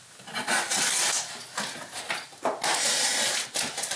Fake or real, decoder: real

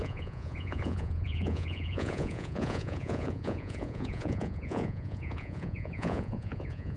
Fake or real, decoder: fake, vocoder, Vocos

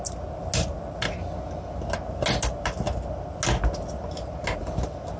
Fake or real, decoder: real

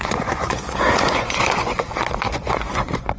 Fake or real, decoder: fake, vocoder, Vocos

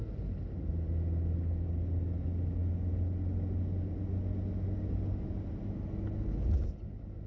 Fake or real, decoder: real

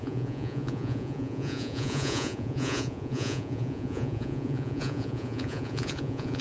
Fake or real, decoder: fake, vocoder, Vocos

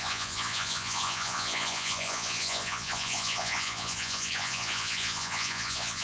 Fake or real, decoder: fake, vocoder, Vocos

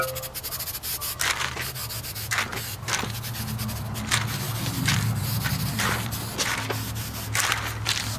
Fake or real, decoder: real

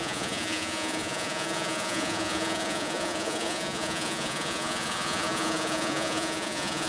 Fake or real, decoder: fake, vocoder, Vocos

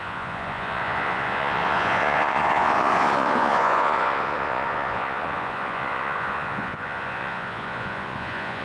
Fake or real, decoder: fake, vocoder, Vocos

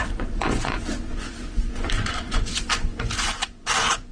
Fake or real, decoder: fake, vocoder, Vocos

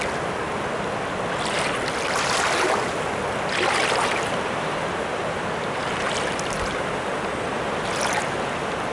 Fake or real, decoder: real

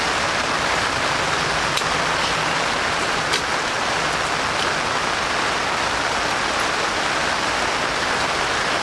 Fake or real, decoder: real